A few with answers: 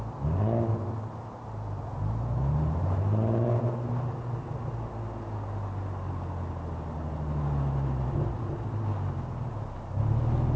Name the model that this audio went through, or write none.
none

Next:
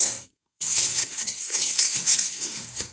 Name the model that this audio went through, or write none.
codec, SNAC